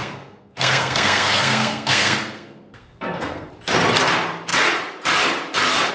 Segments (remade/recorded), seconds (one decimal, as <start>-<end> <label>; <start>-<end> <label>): 0.0-3.5 remade; 3.5-5.9 recorded